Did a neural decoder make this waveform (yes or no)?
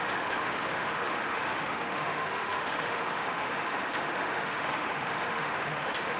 yes